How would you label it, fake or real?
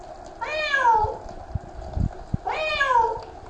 real